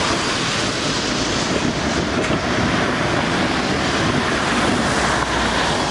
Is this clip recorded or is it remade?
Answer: recorded